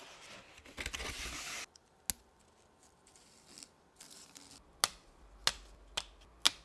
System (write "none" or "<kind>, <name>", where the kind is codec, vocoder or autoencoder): none